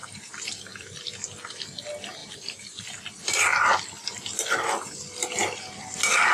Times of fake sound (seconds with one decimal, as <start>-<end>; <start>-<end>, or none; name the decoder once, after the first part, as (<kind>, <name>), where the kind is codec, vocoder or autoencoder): 0.0-1.0 (vocoder, BigVGAN v2); 2.2-3.0